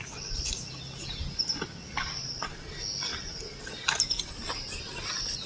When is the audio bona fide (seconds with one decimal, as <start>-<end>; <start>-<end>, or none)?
0.0-2.2; 2.7-5.5